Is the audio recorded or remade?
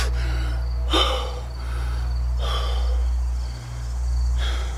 recorded